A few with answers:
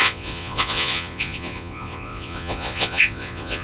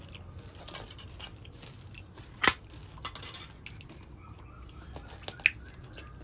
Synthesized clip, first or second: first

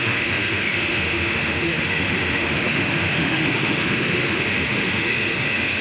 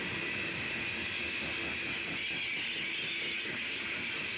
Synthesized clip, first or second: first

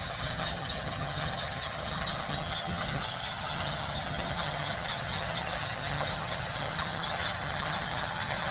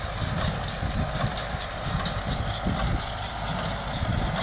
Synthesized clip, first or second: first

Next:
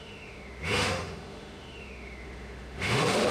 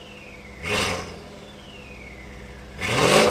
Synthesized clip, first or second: first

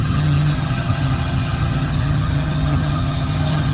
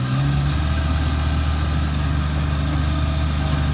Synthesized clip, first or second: first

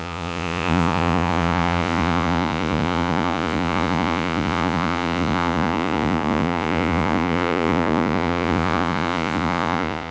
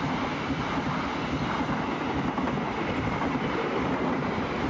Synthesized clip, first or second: first